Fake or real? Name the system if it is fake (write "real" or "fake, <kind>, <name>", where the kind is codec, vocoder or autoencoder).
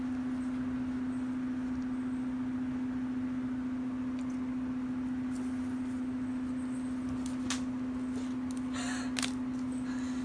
real